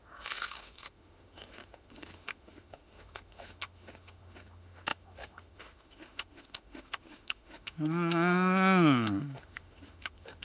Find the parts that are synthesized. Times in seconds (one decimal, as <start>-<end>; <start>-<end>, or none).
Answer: 0.0-10.4